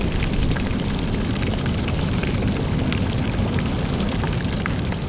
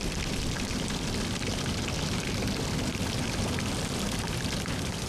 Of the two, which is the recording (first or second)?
second